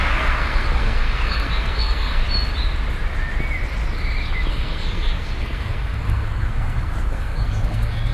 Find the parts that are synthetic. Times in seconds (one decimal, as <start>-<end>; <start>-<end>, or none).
0.0-2.2; 4.5-8.1